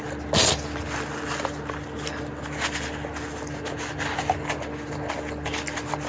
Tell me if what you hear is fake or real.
real